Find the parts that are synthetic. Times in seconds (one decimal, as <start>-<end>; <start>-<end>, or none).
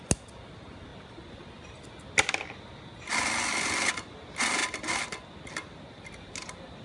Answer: none